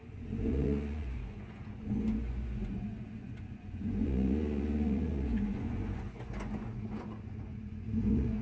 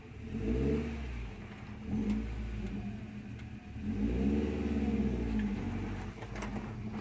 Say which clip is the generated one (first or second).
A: first